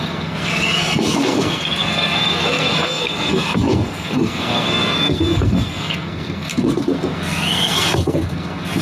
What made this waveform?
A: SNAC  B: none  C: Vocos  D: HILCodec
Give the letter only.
A